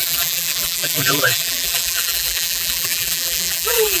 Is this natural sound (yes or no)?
no